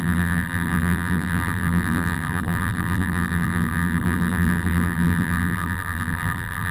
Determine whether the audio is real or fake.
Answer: fake